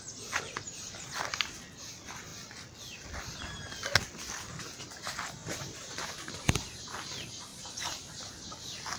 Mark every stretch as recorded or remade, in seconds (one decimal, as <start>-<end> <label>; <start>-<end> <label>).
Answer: 0.0-5.4 recorded; 5.4-6.3 remade; 6.3-7.5 recorded; 7.5-8.3 remade; 8.3-9.0 recorded